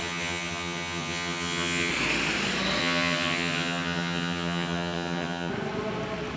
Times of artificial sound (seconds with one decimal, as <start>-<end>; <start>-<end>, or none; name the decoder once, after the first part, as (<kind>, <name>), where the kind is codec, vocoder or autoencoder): 0.0-1.9 (vocoder, HiFi-GAN); 2.8-5.5